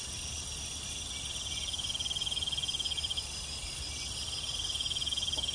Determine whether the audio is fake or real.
real